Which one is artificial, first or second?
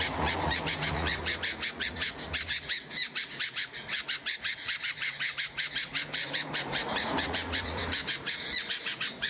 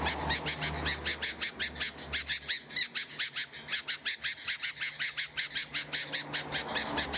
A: first